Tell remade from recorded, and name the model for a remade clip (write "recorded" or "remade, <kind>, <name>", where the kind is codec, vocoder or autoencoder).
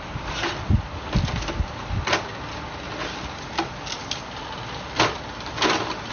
recorded